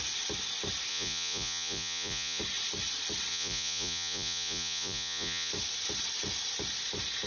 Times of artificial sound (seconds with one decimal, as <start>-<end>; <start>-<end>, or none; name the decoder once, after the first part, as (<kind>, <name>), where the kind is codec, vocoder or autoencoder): 0.9-2.4 (vocoder, Vocos); 3.3-5.5